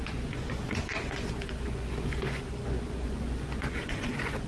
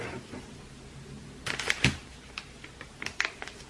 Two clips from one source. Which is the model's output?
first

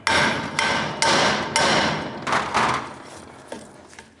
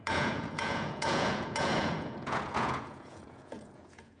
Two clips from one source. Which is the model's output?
second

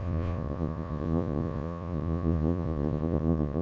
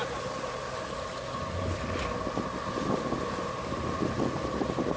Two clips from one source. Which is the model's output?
first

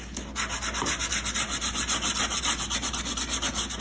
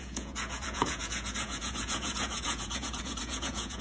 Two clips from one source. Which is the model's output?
second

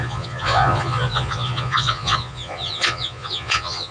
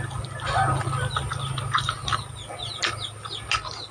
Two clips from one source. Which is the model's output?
first